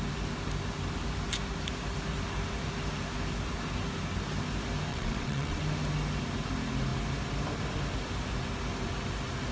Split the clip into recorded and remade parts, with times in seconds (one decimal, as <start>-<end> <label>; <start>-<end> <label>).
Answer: 0.0-4.9 recorded; 4.9-5.6 remade; 5.6-9.5 recorded